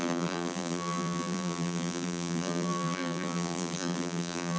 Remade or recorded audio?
remade